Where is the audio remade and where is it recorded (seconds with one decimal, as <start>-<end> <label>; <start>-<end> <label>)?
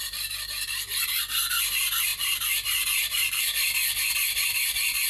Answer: 0.0-5.1 recorded